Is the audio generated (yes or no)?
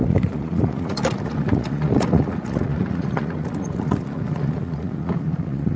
yes